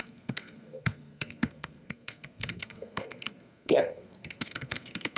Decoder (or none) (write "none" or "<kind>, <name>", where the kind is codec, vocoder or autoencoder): codec, SNAC